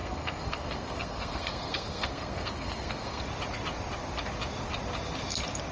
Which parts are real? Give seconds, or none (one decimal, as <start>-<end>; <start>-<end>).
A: 3.2-5.7